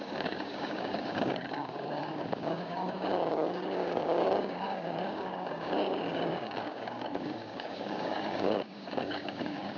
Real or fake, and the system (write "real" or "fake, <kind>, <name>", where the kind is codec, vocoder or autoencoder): fake, codec, DAC